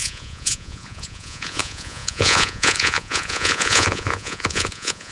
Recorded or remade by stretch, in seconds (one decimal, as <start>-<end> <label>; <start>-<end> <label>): 0.0-5.1 remade